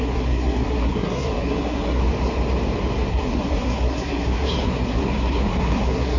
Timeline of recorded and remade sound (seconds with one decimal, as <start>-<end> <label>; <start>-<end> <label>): 0.0-2.0 remade; 2.0-3.1 recorded; 3.1-6.2 remade